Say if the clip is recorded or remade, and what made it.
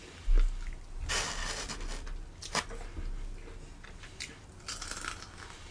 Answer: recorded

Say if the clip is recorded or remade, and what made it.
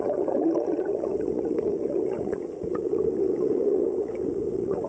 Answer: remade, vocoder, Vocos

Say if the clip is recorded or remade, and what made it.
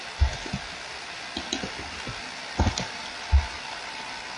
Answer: recorded